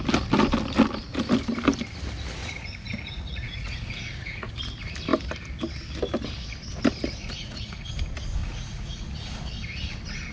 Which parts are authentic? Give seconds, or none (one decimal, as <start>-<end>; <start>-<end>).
0.0-2.4; 4.5-7.2; 7.9-8.4; 9.0-10.3